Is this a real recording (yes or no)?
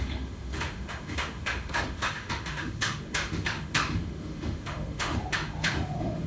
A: no